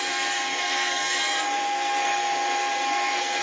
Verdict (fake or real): fake